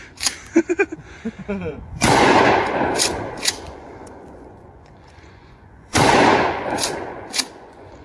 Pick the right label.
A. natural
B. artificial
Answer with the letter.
B